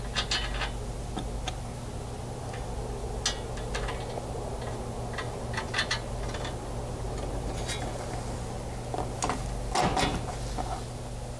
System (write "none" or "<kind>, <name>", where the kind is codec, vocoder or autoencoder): none